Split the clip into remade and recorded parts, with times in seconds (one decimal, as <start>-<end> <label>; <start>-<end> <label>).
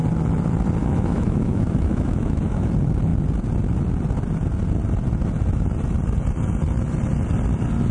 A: 0.0-0.8 recorded; 0.8-2.7 remade; 2.7-7.9 recorded